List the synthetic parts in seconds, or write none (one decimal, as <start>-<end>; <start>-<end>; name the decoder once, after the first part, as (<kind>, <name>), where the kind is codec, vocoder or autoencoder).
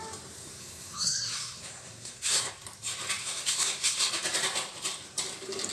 0.4-2.5 (codec, SNAC); 3.2-4.1